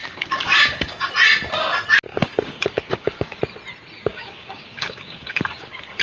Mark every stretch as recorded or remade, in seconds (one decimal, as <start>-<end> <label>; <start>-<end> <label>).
0.0-1.1 remade; 1.1-2.1 recorded; 2.1-3.4 remade; 3.4-4.1 recorded; 4.1-6.0 remade